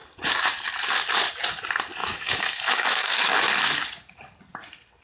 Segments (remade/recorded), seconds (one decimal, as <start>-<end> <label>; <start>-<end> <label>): 0.0-2.0 recorded; 2.0-3.3 remade; 3.3-5.0 recorded